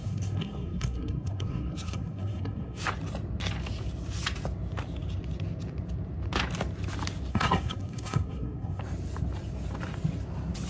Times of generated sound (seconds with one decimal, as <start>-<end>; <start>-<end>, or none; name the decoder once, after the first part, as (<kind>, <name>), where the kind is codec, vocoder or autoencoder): 0.0-2.8 (codec, SNAC); 7.3-8.8